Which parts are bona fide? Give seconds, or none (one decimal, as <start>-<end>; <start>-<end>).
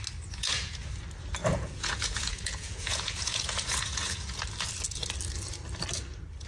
0.0-0.4; 0.9-1.4; 4.4-6.5